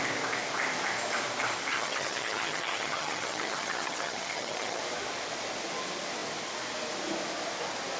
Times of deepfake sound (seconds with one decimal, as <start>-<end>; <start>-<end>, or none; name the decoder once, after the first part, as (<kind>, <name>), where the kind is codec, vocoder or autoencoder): 1.7-4.8 (vocoder, HiFi-GAN)